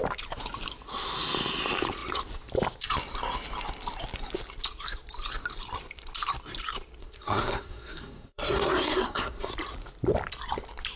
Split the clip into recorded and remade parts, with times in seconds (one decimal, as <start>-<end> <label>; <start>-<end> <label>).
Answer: 0.0-7.0 recorded; 7.0-9.5 remade; 9.5-11.0 recorded

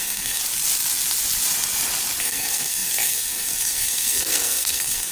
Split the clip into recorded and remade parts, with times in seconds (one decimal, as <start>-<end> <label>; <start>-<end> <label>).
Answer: 0.0-0.4 remade; 0.4-2.2 recorded; 2.2-5.1 remade

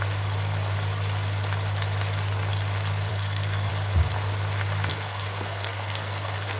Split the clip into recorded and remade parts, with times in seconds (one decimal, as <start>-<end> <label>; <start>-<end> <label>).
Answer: 0.0-3.1 recorded; 3.1-3.7 remade; 3.7-4.9 recorded; 4.9-6.6 remade

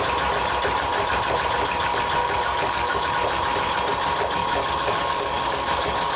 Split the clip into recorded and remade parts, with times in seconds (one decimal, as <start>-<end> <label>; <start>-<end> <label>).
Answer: 0.0-2.2 recorded; 2.2-3.1 remade; 3.1-4.4 recorded; 4.4-6.2 remade

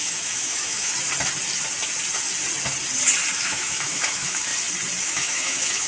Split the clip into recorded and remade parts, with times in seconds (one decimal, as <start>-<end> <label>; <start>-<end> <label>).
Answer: 0.0-0.9 remade; 0.9-3.3 recorded; 3.3-4.5 remade; 4.5-5.0 recorded; 5.0-5.9 remade

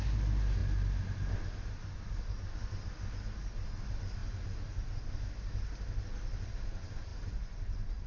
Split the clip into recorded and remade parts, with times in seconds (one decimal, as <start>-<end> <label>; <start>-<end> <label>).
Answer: 0.0-0.6 recorded; 0.6-2.3 remade; 2.3-4.2 recorded; 4.2-5.3 remade; 5.3-8.1 recorded

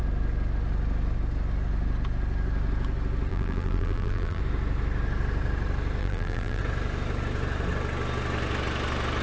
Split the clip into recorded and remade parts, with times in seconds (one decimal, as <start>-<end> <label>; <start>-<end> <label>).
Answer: 0.0-3.3 recorded; 3.3-4.4 remade; 4.4-6.0 recorded; 6.0-6.6 remade; 6.6-9.2 recorded